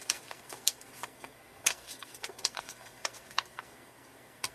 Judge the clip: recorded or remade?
remade